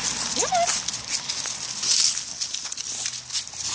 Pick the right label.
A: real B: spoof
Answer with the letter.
A